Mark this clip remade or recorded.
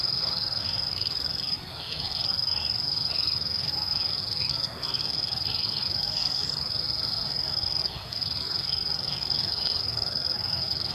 remade